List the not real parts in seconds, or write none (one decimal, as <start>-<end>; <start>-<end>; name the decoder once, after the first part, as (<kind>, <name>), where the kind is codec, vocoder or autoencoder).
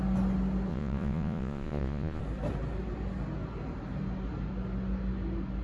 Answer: 0.7-2.2 (vocoder, Vocos)